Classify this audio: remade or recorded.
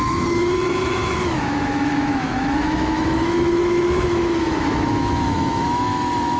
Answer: remade